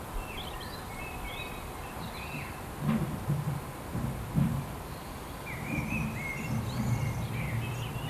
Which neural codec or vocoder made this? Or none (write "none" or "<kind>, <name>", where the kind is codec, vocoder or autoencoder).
none